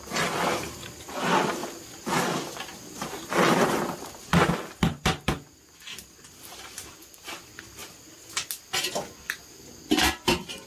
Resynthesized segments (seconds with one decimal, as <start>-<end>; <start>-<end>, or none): 0.0-2.7; 3.3-4.3; 6.5-7.8; 9.6-10.7